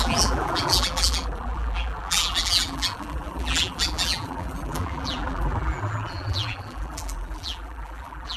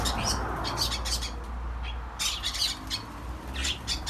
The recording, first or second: second